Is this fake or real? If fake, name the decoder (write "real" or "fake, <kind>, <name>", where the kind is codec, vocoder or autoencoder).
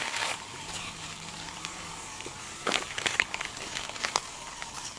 fake, codec, DAC